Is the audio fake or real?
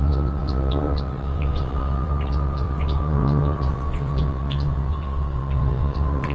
fake